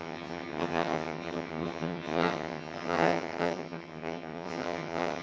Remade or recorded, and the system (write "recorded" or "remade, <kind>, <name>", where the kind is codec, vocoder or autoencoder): remade, vocoder, HiFi-GAN